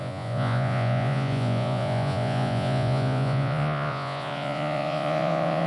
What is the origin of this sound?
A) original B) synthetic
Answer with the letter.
B